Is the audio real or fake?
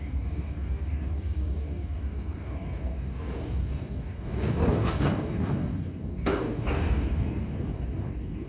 fake